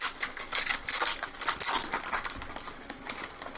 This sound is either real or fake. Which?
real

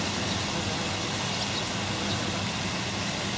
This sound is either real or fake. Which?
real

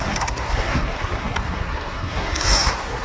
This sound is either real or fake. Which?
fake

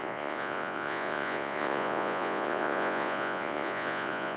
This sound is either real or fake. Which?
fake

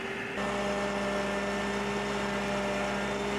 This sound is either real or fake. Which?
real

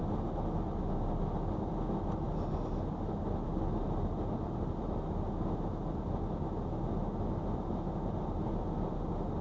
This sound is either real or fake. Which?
real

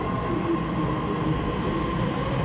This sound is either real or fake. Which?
real